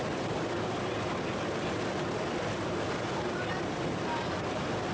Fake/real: fake